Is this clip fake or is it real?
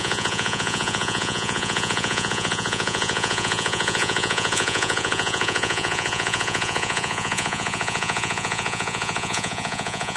fake